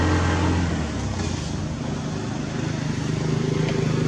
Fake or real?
real